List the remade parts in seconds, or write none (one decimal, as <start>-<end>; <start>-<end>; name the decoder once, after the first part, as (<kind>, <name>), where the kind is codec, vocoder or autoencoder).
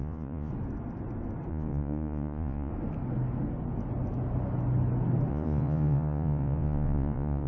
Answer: 0.0-0.5 (vocoder, Vocos); 1.5-2.7; 5.3-7.5